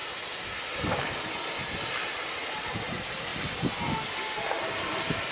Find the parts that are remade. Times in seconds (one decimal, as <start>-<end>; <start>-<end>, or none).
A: none